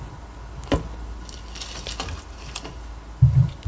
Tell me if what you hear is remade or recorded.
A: recorded